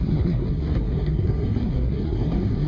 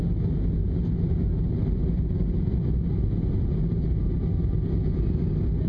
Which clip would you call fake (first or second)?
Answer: first